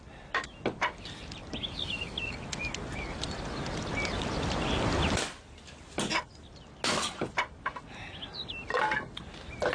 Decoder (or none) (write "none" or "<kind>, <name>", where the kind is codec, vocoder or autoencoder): none